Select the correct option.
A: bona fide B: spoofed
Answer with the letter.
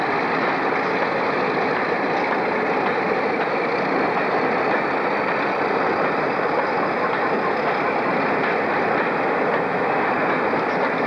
A